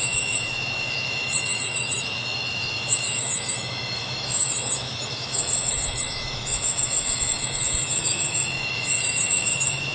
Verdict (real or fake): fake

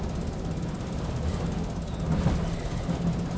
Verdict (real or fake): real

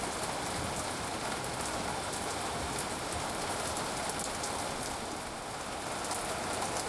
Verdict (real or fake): real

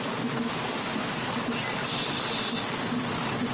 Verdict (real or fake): real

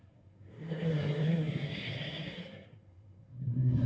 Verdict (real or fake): fake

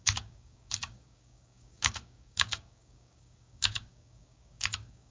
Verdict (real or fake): fake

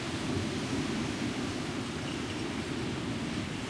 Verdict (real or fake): real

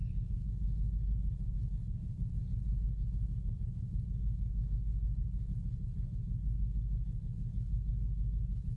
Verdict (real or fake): fake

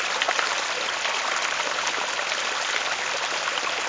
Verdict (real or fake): real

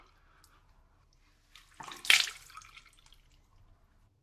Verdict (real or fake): real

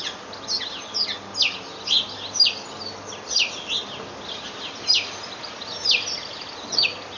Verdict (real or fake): real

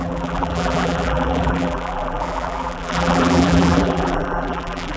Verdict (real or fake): fake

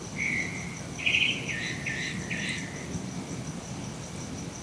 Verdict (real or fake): real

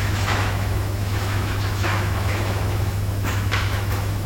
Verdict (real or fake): fake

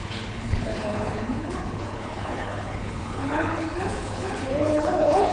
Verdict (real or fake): fake